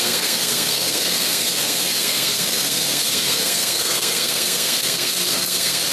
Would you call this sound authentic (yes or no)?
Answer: no